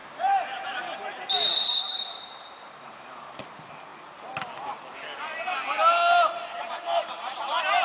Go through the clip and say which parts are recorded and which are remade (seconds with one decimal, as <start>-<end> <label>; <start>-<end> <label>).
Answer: 0.0-3.4 remade; 3.4-7.8 recorded